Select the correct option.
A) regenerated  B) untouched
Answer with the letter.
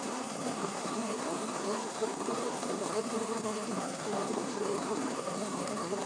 A